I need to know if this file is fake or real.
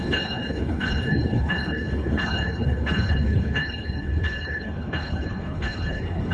fake